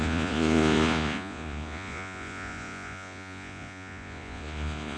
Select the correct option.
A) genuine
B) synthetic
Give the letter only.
B